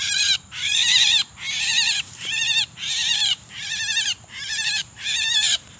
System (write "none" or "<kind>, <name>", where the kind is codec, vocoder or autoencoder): vocoder, BigVGAN v2